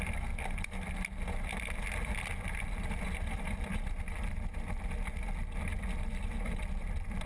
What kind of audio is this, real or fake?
real